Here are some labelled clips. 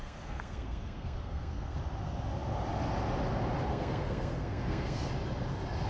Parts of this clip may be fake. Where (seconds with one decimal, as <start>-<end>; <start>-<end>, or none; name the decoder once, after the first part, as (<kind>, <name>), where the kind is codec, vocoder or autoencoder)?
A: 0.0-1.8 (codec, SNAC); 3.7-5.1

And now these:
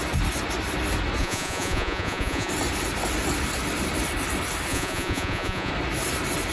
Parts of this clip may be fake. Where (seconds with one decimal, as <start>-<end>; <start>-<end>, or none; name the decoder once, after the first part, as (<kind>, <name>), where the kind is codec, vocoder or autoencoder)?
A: 1.2-2.5 (vocoder, Vocos); 4.7-5.7

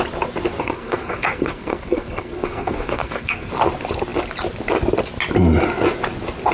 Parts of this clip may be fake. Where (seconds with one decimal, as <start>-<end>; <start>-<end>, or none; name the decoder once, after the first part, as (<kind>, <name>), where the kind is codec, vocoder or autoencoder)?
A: 0.6-3.5 (codec, SNAC)